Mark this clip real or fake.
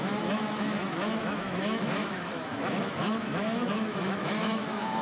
fake